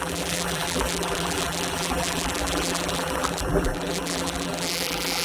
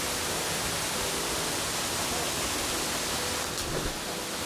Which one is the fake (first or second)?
first